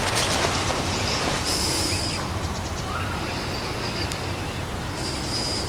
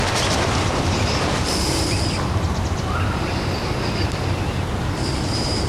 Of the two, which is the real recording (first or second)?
first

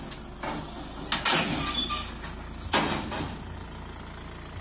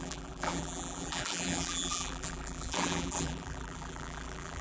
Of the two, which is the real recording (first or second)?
first